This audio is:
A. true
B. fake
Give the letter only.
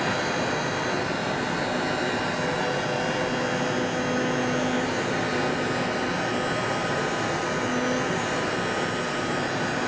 A